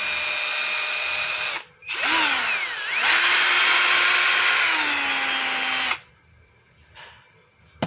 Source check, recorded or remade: recorded